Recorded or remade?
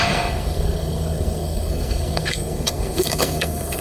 remade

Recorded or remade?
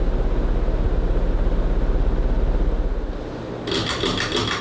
recorded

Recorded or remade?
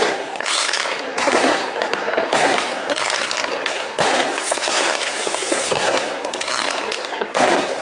remade